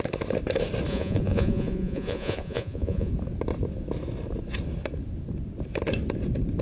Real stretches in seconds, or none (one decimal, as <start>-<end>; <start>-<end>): 0.0-0.9; 3.1-6.6